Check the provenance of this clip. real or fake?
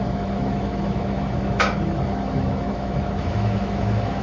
fake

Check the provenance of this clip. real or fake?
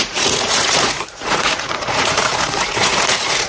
fake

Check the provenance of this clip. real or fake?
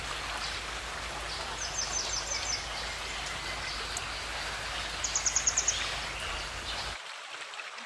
real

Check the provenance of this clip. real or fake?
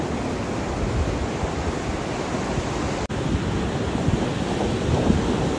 real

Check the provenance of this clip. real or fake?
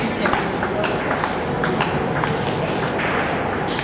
real